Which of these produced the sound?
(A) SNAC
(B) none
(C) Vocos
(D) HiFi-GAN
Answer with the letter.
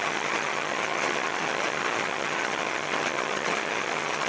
D